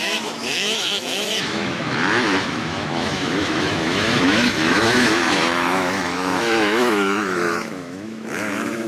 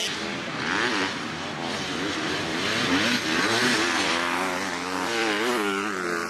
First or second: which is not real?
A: first